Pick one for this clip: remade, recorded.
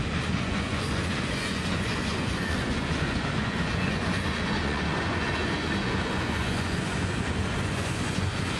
remade